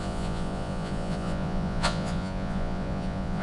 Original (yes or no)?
no